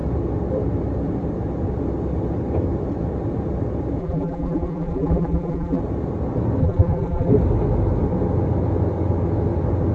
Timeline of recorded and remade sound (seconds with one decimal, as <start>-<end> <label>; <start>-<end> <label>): 0.0-4.0 recorded; 4.0-5.8 remade; 5.8-6.6 recorded; 6.6-7.3 remade; 7.3-9.9 recorded